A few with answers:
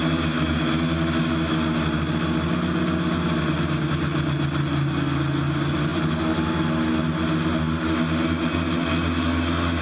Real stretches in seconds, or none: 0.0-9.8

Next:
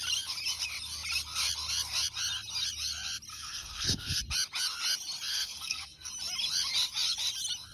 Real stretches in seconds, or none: 0.0-3.3; 4.2-5.3; 6.1-7.7

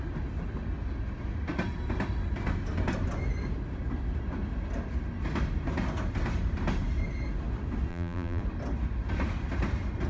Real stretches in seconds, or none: 0.0-7.9; 8.4-10.1

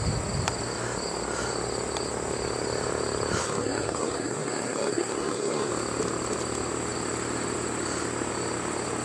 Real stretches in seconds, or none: 0.0-3.4; 5.7-9.0

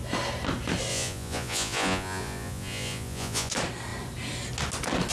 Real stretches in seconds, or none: 0.0-0.9; 3.5-5.1

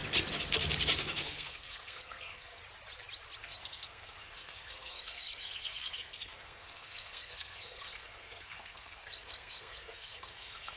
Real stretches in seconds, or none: 0.0-1.0; 2.6-3.4

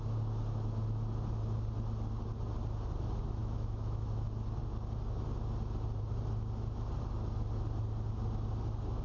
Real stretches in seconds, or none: 0.0-3.4; 4.1-9.0

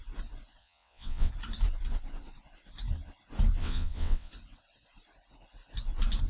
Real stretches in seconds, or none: 0.0-0.6; 1.3-3.6; 4.3-6.3